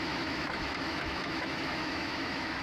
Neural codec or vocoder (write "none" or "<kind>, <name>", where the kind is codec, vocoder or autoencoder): autoencoder, DAC-VAE